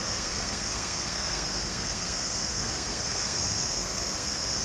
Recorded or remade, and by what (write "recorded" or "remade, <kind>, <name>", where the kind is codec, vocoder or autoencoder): remade, codec, SNAC